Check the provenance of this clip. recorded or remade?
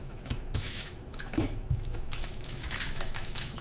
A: remade